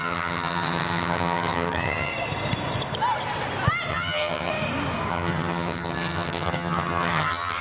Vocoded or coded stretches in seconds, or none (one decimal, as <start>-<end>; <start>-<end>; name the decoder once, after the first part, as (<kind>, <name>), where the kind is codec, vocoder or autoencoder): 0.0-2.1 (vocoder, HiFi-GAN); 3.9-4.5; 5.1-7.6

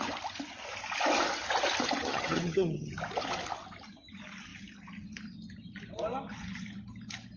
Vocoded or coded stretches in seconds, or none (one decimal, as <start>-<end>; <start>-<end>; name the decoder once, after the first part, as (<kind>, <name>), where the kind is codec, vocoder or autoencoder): 2.0-2.9 (vocoder, HiFi-GAN)

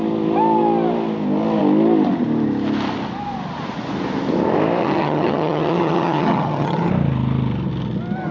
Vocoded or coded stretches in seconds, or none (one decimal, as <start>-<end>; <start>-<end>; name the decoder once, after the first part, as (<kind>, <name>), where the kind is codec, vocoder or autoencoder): 4.8-6.9 (vocoder, HiFi-GAN)

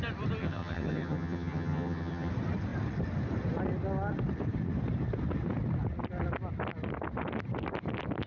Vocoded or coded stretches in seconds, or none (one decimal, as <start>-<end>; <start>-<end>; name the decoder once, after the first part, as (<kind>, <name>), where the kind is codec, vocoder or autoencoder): 0.4-2.3 (vocoder, HiFi-GAN)

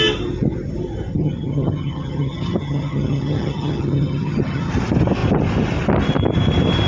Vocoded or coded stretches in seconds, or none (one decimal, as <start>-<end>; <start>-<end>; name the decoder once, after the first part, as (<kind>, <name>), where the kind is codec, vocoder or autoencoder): 1.1-4.7 (vocoder, HiFi-GAN)

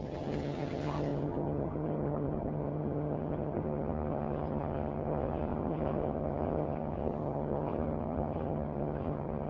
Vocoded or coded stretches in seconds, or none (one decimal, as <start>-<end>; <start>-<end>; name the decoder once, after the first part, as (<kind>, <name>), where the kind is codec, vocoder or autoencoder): 0.0-9.5 (vocoder, HiFi-GAN)